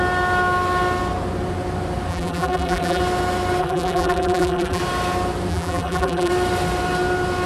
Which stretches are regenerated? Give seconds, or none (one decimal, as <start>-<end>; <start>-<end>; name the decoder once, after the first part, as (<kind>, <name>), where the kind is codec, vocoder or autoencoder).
2.1-3.0 (vocoder, BigVGAN v2); 3.6-4.8; 5.5-6.3